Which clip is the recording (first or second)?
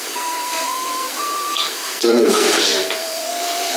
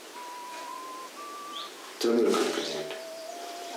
second